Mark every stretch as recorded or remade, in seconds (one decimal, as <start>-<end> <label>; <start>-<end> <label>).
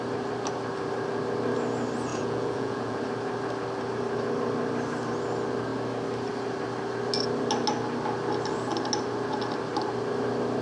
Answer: 0.0-2.1 recorded; 2.1-3.0 remade; 3.0-10.6 recorded